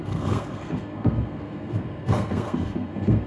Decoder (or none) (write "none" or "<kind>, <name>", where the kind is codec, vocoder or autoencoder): codec, SNAC